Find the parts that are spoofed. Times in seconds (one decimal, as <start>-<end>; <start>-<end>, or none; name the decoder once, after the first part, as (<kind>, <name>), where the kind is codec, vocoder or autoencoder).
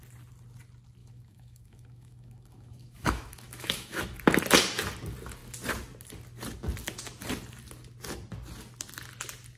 1.0-4.0 (autoencoder, DAC-VAE)